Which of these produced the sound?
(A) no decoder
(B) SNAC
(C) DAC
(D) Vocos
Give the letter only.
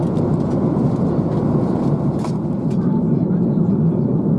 A